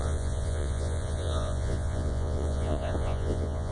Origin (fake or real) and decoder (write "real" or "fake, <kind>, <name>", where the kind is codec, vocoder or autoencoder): fake, vocoder, Vocos